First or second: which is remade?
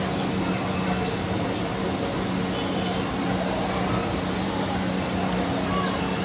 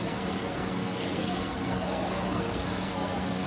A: second